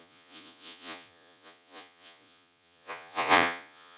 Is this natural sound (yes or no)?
no